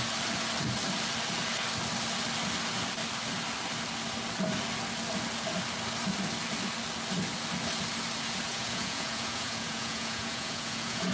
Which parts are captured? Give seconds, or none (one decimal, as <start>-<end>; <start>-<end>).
0.0-8.5